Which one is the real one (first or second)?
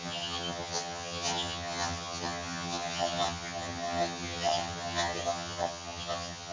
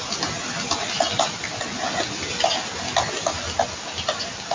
second